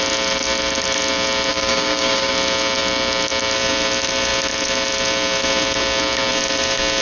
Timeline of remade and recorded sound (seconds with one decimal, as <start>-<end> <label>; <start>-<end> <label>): 0.0-1.5 recorded; 1.5-2.3 remade; 2.3-7.0 recorded

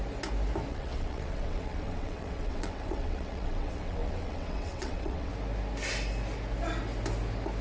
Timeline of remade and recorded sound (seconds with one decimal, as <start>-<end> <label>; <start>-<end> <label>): 0.0-0.7 recorded; 0.7-5.3 remade; 5.3-7.6 recorded

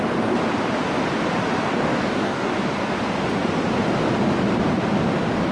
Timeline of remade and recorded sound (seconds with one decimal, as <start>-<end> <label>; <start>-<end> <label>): 0.0-1.7 recorded; 1.7-2.5 remade; 2.5-5.5 recorded

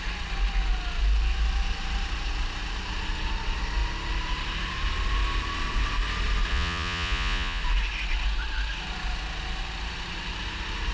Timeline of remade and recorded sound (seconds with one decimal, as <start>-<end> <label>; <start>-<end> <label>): 0.0-6.5 recorded; 6.5-7.6 remade; 7.6-10.9 recorded